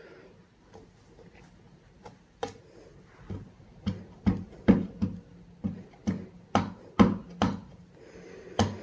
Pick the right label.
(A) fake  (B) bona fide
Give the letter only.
B